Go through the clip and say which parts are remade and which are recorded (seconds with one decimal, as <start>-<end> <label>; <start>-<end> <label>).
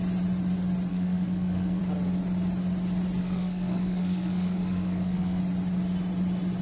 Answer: 0.0-0.9 recorded; 0.9-1.8 remade; 1.8-3.2 recorded; 3.2-5.4 remade; 5.4-6.6 recorded